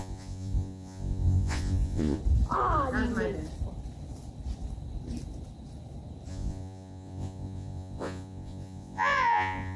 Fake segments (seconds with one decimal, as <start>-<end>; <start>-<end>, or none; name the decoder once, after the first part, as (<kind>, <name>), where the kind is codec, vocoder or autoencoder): 0.0-2.2 (vocoder, Vocos); 6.3-9.8

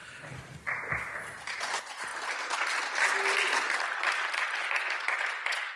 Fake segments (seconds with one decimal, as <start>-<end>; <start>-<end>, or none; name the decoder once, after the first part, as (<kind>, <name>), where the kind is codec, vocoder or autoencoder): 1.5-2.1 (vocoder, Vocos); 4.6-5.8

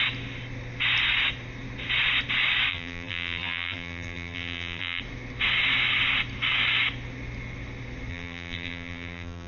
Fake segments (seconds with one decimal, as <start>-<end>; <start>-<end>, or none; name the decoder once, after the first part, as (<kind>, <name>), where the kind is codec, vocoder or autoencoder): 2.7-5.0 (vocoder, BigVGAN v2); 8.1-9.5

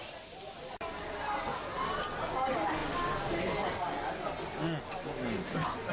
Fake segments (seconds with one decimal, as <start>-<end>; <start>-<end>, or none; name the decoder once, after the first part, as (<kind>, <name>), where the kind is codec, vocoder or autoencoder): none

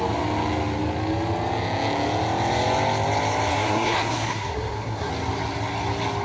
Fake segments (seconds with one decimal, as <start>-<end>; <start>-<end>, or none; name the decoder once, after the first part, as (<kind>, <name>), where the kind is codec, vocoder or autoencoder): 3.5-5.1 (codec, SNAC)

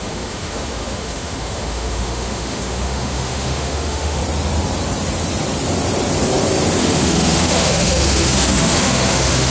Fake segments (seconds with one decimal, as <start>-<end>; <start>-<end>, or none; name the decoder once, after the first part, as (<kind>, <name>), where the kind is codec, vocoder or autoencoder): 0.0-4.2 (autoencoder, DAC-VAE); 6.8-9.5

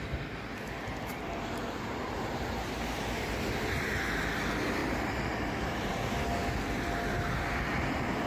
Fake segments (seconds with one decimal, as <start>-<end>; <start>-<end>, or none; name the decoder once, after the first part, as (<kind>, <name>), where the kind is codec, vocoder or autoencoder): 4.8-5.9 (vocoder, BigVGAN v2)

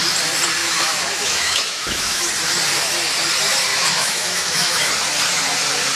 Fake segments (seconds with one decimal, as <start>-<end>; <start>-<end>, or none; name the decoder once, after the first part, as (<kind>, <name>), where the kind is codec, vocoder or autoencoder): 0.6-2.3 (autoencoder, DAC-VAE); 3.7-4.9